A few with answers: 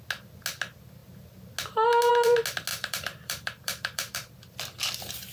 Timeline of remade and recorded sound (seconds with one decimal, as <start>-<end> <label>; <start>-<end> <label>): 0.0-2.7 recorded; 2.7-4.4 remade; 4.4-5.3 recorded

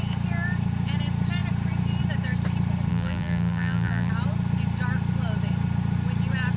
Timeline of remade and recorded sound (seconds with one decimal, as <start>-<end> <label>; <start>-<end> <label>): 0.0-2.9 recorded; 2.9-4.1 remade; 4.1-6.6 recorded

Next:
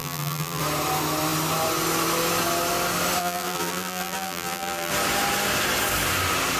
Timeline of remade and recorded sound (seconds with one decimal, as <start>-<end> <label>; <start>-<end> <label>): 0.0-0.6 remade; 0.6-3.2 recorded; 3.2-4.9 remade; 4.9-6.6 recorded

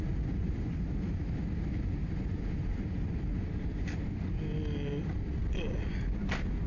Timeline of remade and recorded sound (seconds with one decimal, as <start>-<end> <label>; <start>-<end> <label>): 0.0-0.4 recorded; 0.4-0.9 remade; 0.9-2.0 recorded; 2.0-4.1 remade; 4.1-6.7 recorded

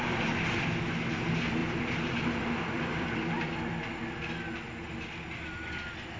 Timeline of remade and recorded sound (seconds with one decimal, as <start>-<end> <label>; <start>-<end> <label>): 0.0-1.6 recorded; 1.6-4.0 remade; 4.0-6.2 recorded

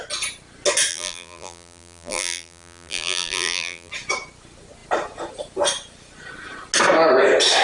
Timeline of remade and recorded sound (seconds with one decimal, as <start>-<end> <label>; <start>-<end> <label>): 0.0-0.9 recorded; 0.9-3.9 remade; 3.9-7.6 recorded

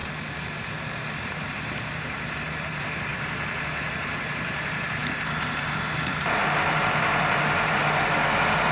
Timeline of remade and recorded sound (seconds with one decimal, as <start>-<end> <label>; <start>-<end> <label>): 0.0-1.5 recorded; 1.5-3.1 remade; 3.1-3.9 recorded; 3.9-7.8 remade; 7.8-8.7 recorded

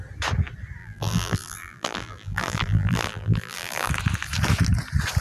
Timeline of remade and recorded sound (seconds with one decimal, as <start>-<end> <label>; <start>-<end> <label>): 0.0-0.8 recorded; 0.8-3.9 remade; 3.9-5.2 recorded